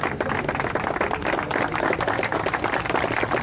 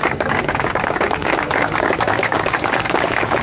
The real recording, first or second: first